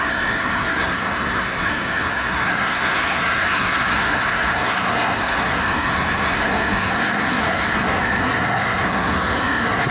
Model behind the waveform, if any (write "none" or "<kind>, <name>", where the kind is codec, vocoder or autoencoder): codec, SNAC